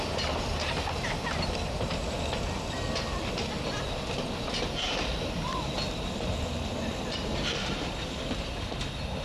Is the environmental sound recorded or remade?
recorded